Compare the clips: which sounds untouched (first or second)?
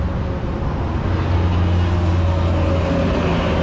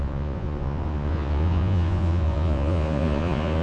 first